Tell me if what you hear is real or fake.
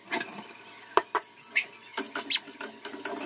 real